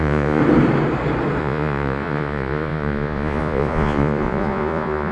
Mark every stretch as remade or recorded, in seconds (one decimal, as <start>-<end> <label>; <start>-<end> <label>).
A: 0.0-0.4 remade; 0.4-1.4 recorded; 1.4-5.1 remade